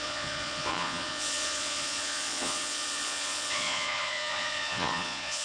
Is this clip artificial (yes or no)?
yes